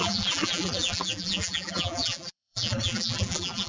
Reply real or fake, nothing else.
fake